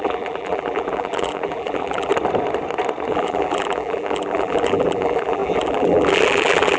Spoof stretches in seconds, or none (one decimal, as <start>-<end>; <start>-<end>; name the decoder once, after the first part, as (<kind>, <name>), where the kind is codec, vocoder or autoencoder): 0.0-2.1 (vocoder, BigVGAN v2); 3.1-6.8